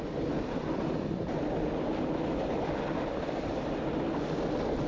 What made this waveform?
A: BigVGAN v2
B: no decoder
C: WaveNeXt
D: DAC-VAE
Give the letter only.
B